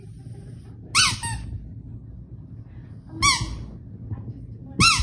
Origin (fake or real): real